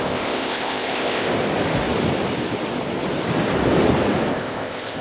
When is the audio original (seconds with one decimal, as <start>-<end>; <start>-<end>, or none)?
1.3-4.3